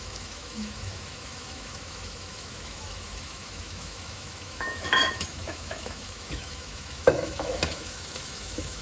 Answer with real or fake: fake